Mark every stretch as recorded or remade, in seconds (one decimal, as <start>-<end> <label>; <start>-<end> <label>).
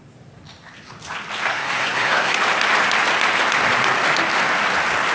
0.0-1.5 recorded; 1.5-2.4 remade; 2.4-5.1 recorded